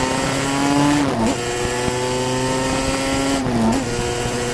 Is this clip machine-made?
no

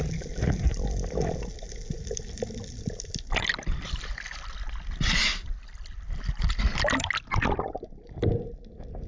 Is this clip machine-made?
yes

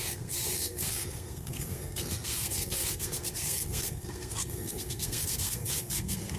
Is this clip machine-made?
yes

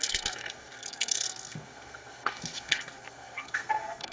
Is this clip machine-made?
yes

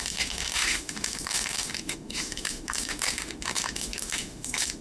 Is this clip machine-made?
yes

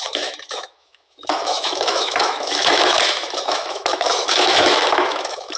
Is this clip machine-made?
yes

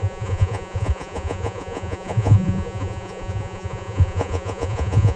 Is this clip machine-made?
yes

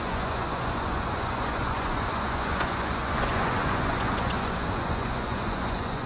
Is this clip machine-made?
yes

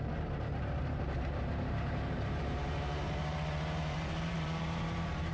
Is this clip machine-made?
yes